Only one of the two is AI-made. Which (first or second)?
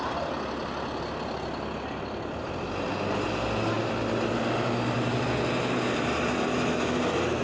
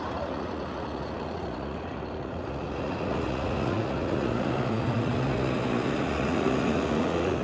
second